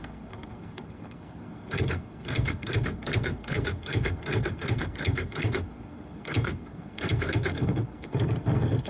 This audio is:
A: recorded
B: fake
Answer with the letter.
B